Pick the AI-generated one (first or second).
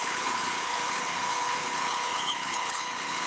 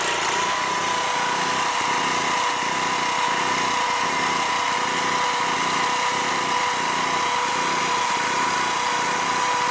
first